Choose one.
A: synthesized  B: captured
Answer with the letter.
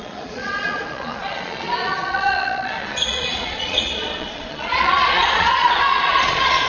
A